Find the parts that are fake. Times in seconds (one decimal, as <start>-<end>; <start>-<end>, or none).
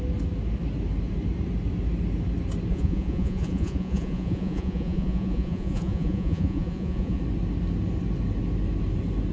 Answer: 2.7-7.2